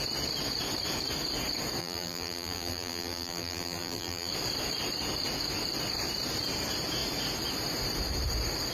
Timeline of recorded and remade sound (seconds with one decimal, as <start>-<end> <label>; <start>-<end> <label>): 0.0-1.8 recorded; 1.8-4.3 remade; 4.3-8.7 recorded